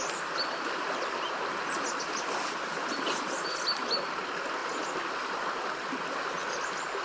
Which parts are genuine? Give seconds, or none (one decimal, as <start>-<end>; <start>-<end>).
0.0-7.0